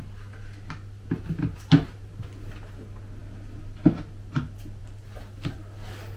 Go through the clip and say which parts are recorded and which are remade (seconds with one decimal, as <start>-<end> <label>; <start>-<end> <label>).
0.0-6.2 recorded